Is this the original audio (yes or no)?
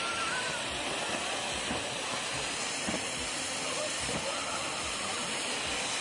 yes